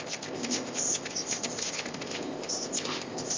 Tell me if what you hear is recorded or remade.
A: remade